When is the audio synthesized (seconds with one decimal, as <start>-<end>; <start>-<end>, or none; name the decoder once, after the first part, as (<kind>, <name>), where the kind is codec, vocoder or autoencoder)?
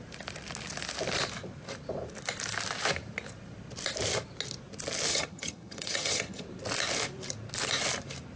5.1-6.4 (vocoder, HiFi-GAN)